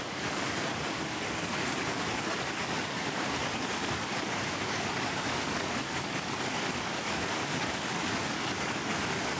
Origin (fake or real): fake